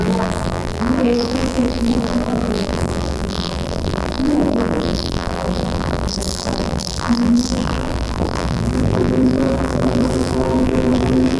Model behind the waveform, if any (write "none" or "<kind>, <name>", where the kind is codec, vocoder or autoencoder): vocoder, BigVGAN v2